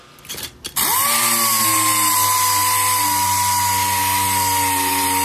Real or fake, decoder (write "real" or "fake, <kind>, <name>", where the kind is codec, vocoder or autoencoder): real